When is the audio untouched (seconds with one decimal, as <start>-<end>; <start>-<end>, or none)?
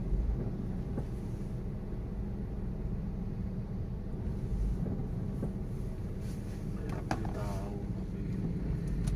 0.5-3.1; 3.9-9.2